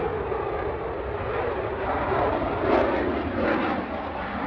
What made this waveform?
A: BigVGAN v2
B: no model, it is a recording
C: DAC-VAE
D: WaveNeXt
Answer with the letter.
B